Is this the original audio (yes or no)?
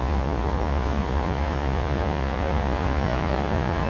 no